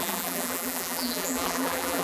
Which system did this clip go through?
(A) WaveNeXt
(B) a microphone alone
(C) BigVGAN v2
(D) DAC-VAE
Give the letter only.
C